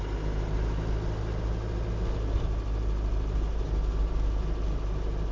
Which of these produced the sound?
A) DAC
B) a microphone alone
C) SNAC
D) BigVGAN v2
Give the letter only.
B